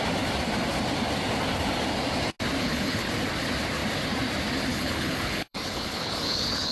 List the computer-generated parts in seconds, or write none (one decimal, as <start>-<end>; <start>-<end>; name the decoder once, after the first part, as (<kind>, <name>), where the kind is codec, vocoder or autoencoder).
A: 2.6-3.1 (codec, HILCodec); 4.7-6.7